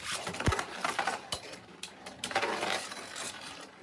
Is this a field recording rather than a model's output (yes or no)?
no